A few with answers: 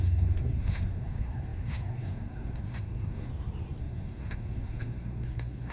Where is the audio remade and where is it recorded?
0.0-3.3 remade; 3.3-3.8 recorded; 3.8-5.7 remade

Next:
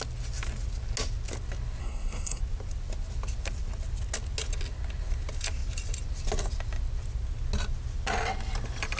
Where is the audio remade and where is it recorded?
0.0-1.8 recorded; 1.8-2.4 remade; 2.4-9.0 recorded